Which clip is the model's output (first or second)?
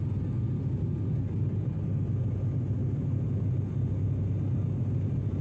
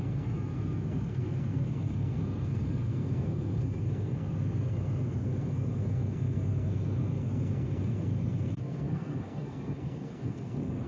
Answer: second